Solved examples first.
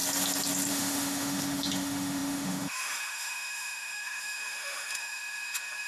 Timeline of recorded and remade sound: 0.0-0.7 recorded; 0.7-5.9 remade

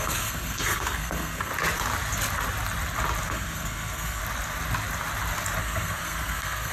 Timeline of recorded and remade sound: 0.0-1.5 remade; 1.5-3.3 recorded; 3.3-4.2 remade; 4.2-5.6 recorded; 5.6-6.7 remade

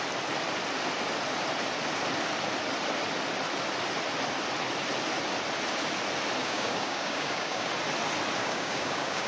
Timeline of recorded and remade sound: 0.0-6.4 recorded; 6.4-7.7 remade; 7.7-8.4 recorded; 8.4-9.3 remade

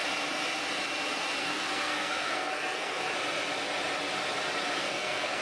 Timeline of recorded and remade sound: 0.0-1.4 recorded; 1.4-3.0 remade; 3.0-4.8 recorded; 4.8-5.4 remade

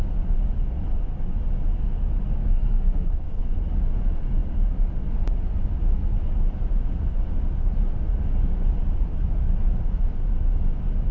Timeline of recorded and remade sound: 0.0-2.4 recorded; 2.4-3.4 remade; 3.4-11.1 recorded

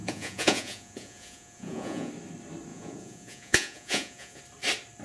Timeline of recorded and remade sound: 0.0-2.1 remade; 2.1-2.7 recorded; 2.7-4.4 remade; 4.4-5.0 recorded

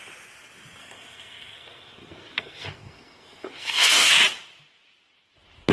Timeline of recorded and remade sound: 0.0-0.8 recorded; 0.8-4.2 remade; 4.2-5.7 recorded